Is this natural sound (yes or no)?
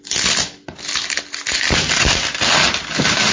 yes